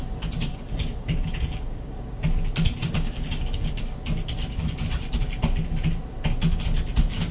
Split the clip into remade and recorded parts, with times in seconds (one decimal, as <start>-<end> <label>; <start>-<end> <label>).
0.0-0.5 recorded; 0.5-2.0 remade; 2.0-2.8 recorded; 2.8-3.8 remade; 3.8-7.3 recorded